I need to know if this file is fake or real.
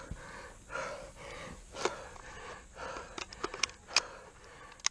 real